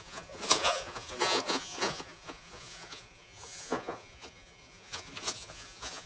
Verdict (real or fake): fake